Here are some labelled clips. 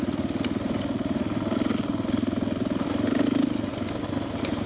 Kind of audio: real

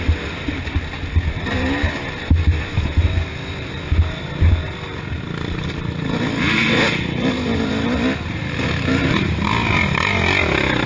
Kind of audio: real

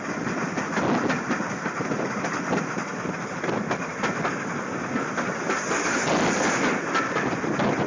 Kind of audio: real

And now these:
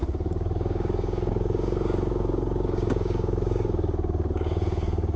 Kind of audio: fake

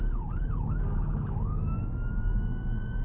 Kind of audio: fake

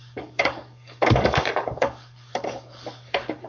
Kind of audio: fake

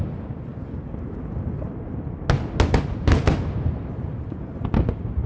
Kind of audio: real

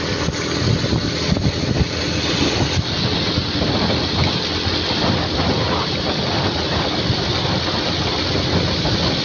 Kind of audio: real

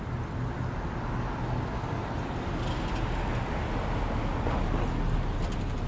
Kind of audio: real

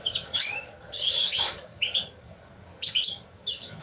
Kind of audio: fake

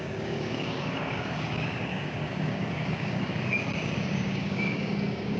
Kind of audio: fake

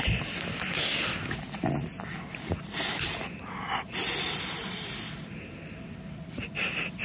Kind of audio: real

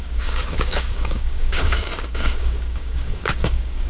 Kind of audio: fake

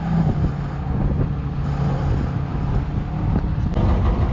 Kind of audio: real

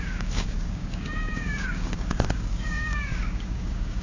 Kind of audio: fake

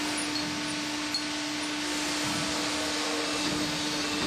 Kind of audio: real